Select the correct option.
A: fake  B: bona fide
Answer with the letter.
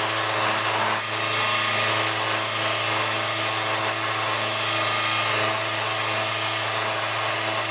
B